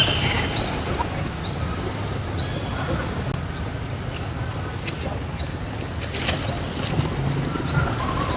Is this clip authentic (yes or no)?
yes